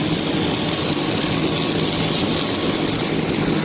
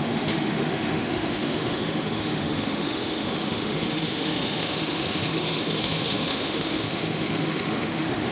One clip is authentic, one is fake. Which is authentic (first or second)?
first